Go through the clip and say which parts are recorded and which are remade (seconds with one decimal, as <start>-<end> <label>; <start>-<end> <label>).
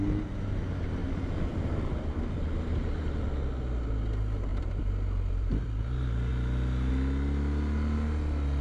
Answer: 0.0-1.0 recorded; 1.0-1.9 remade; 1.9-4.5 recorded; 4.5-5.5 remade; 5.5-8.6 recorded